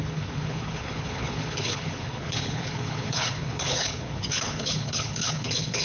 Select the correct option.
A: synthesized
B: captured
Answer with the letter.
A